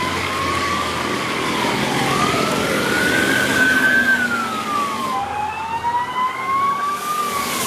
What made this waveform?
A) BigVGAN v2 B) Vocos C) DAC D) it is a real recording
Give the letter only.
C